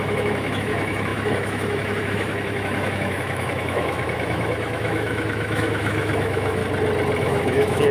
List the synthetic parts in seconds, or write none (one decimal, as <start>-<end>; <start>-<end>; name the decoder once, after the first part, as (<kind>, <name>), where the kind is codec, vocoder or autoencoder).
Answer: 0.0-6.6 (autoencoder, DAC-VAE); 7.2-7.9